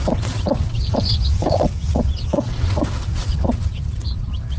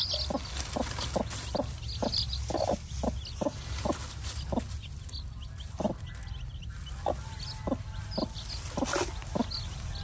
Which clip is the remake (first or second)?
first